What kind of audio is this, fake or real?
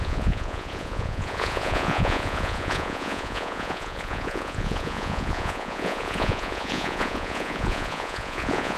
fake